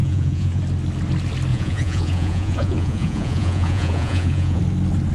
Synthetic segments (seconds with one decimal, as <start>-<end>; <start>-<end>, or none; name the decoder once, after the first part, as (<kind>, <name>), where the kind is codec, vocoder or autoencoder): 0.0-0.6 (vocoder, Vocos); 1.5-4.6